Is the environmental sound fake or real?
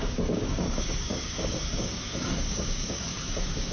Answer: fake